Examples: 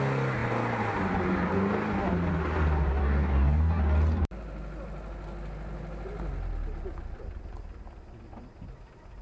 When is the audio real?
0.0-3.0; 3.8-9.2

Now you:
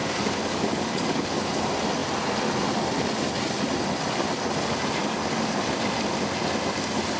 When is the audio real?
1.4-5.0; 5.6-7.2

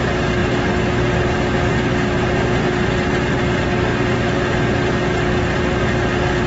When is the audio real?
0.0-6.5

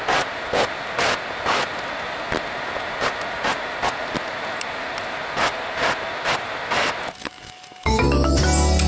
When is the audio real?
0.0-7.2; 8.3-8.9

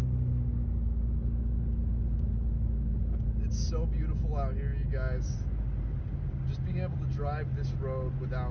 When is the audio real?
0.0-8.5

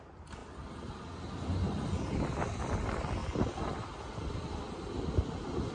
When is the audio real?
0.0-5.7

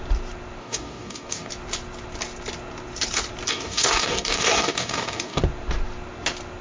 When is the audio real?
0.0-0.6; 1.5-3.5; 5.4-6.6